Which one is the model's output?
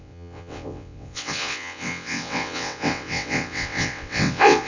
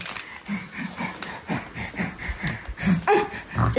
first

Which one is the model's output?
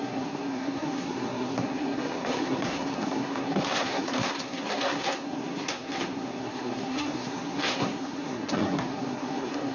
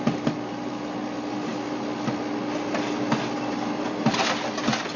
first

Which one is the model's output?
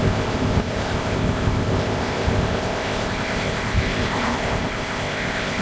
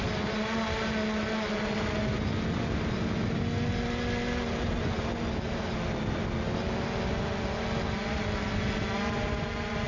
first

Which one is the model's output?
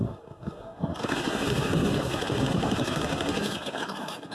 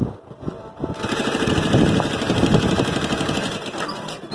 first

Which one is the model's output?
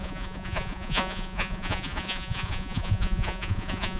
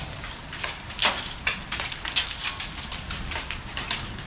first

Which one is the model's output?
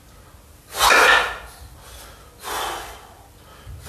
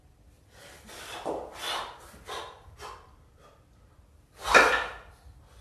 second